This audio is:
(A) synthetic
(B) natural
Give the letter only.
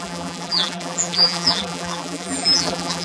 A